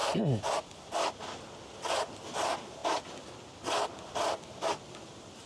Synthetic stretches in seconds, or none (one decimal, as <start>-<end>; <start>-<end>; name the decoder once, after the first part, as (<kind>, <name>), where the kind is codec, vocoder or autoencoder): none